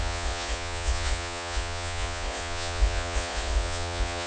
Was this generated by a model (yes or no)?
yes